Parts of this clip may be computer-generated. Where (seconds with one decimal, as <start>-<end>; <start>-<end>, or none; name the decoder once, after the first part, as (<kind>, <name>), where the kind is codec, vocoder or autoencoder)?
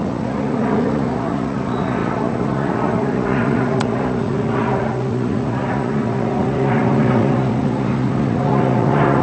0.0-9.2 (vocoder, Vocos)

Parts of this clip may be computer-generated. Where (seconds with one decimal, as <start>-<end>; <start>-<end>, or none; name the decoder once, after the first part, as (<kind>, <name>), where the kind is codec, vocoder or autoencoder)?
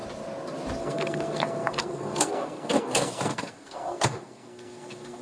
0.8-5.2 (codec, SNAC)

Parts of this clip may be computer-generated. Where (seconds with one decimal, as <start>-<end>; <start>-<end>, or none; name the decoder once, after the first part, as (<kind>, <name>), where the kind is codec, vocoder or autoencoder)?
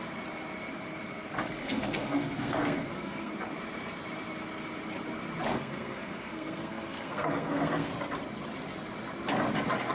1.6-3.3 (codec, SNAC); 5.5-7.9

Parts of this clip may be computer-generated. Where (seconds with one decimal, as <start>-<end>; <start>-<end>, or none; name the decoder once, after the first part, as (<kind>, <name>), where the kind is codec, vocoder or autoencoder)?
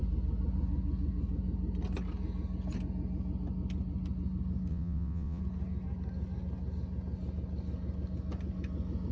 4.7-5.4 (vocoder, WaveNeXt)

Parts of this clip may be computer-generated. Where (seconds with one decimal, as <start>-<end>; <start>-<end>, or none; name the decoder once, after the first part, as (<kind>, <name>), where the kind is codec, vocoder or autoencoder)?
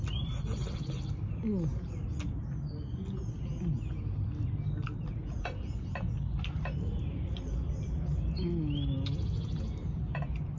none